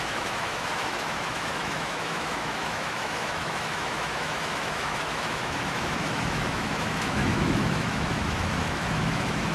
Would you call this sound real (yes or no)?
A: no